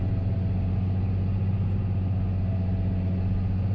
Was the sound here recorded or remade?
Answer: recorded